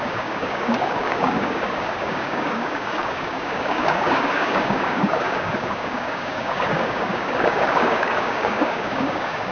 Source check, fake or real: fake